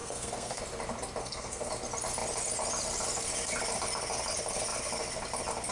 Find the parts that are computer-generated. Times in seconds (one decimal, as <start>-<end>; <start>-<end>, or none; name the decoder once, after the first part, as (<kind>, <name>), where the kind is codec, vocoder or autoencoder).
0.0-0.6 (codec, SNAC); 1.2-1.7